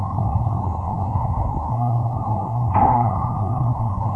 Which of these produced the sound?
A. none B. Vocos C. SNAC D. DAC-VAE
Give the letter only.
C